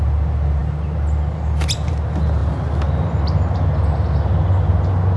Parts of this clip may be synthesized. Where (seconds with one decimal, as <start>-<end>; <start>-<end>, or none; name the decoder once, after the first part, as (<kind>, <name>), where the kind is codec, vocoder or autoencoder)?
none